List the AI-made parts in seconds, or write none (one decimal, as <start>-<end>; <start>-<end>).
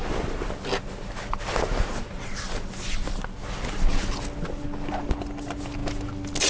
none